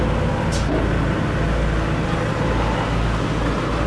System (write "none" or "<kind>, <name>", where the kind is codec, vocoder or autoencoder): none